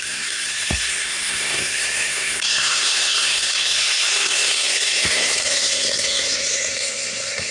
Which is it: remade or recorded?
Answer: remade